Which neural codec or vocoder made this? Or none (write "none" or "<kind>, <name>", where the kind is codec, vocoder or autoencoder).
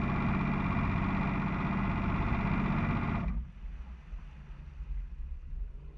none